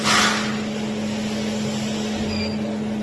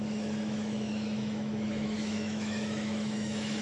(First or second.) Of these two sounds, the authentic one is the first